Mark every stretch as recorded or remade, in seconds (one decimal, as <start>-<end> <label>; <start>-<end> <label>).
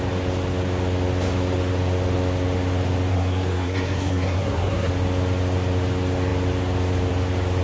0.0-3.1 recorded; 3.1-4.9 remade; 4.9-7.6 recorded